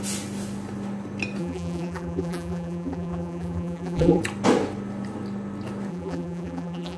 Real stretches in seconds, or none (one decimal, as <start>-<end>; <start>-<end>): 0.0-1.4; 4.2-5.9